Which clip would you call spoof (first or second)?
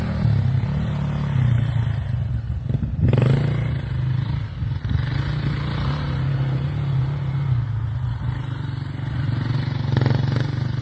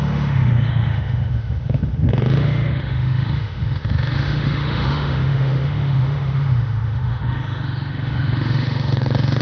second